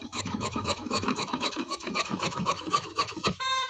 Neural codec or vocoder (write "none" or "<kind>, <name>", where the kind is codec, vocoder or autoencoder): autoencoder, DAC-VAE